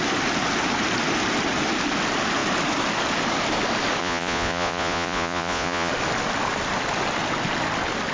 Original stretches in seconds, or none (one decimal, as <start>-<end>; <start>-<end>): 0.0-4.0; 5.9-8.1